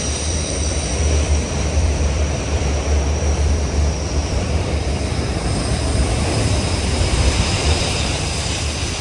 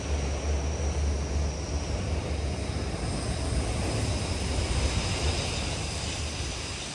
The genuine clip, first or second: second